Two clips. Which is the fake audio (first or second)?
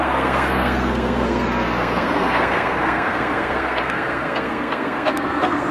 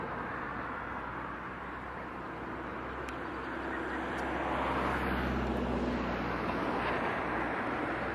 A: first